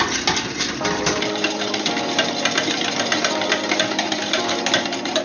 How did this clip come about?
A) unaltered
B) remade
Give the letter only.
B